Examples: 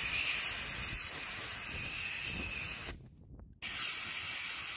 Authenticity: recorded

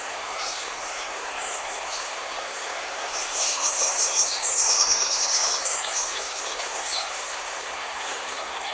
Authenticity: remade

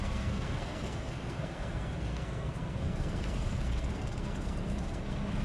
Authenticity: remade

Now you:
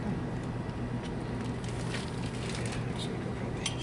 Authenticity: recorded